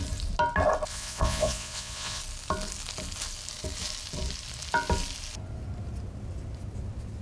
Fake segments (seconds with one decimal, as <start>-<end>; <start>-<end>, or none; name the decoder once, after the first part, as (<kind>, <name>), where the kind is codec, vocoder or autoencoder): 0.9-2.2 (vocoder, Vocos)